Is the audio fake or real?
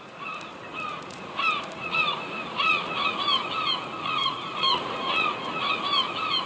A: fake